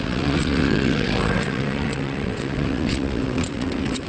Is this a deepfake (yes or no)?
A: yes